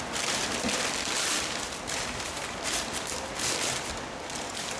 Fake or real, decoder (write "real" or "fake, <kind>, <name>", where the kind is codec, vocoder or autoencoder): fake, vocoder, BigVGAN v2